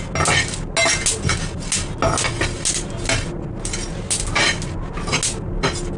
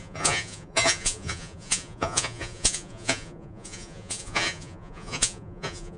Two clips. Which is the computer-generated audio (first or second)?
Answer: second